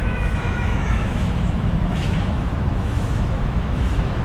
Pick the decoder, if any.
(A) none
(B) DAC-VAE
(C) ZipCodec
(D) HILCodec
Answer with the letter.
B